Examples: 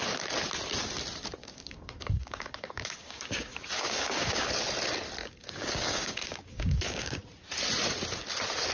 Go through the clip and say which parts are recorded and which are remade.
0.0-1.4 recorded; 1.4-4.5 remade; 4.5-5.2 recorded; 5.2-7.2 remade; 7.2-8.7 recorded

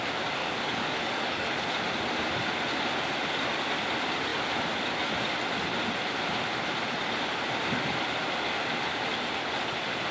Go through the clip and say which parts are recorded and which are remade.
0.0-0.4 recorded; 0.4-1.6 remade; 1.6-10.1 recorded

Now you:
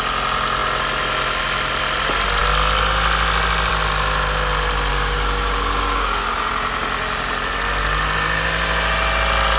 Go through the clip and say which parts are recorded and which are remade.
0.0-4.9 recorded; 4.9-6.2 remade; 6.2-9.6 recorded

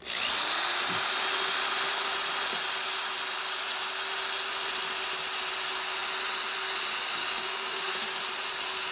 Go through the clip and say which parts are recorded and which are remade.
0.0-7.2 recorded; 7.2-8.2 remade; 8.2-8.9 recorded

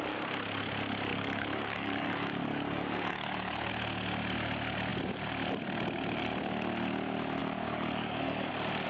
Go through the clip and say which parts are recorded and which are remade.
0.0-1.1 recorded; 1.1-3.7 remade; 3.7-7.4 recorded; 7.4-8.5 remade; 8.5-8.9 recorded

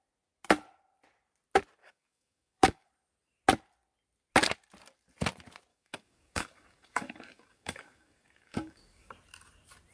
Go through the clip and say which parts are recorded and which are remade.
0.0-1.8 recorded; 1.8-2.9 remade; 2.9-5.7 recorded; 5.7-9.1 remade; 9.1-9.9 recorded

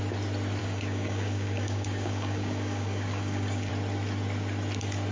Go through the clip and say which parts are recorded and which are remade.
0.0-0.6 recorded; 0.6-3.7 remade; 3.7-5.1 recorded